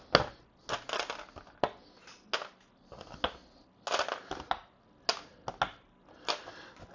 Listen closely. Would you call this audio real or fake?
real